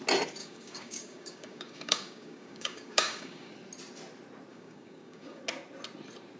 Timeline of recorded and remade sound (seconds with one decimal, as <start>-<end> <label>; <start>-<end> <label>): 0.0-0.4 recorded; 0.4-3.5 remade; 3.5-4.5 recorded; 4.5-5.4 remade; 5.4-6.4 recorded